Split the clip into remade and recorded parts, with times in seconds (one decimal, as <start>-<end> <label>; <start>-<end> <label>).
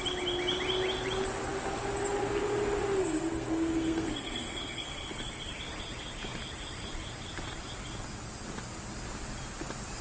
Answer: 0.0-3.0 recorded; 3.0-5.1 remade; 5.1-10.0 recorded